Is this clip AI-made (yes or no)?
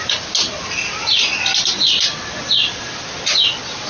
no